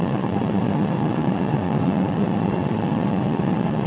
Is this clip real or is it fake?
fake